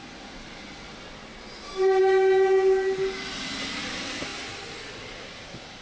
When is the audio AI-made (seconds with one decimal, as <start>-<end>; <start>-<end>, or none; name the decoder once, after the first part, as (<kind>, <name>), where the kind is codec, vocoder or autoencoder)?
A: none